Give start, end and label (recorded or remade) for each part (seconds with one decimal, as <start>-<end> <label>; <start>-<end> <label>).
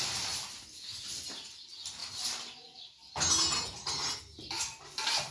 0.0-5.3 recorded